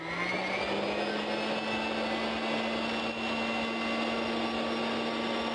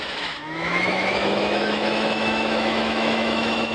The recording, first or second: first